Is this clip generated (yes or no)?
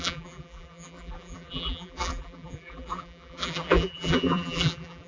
yes